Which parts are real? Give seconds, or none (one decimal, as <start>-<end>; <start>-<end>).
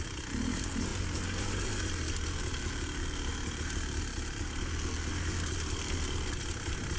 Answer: 0.0-7.0